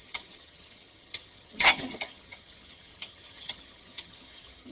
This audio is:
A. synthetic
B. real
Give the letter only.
A